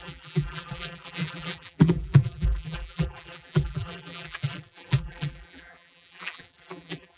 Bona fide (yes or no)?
no